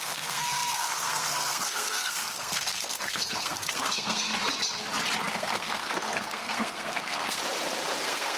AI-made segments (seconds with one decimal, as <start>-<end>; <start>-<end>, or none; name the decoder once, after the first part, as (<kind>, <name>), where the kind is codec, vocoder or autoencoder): 0.0-4.3 (codec, SNAC); 5.3-7.4; 8.0-8.4